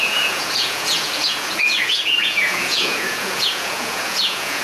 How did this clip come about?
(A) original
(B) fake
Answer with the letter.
B